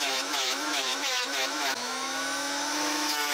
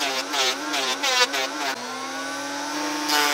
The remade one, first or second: first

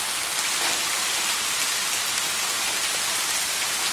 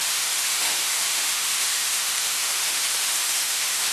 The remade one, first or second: second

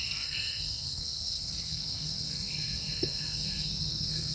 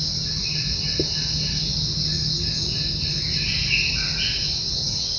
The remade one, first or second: first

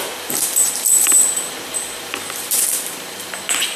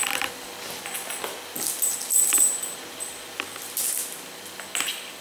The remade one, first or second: first